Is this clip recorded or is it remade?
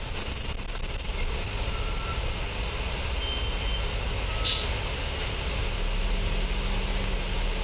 recorded